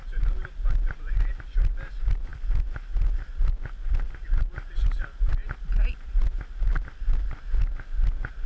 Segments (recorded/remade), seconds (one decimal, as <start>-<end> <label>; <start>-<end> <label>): 0.0-8.5 recorded